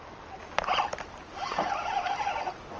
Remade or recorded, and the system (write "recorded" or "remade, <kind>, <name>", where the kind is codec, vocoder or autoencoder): recorded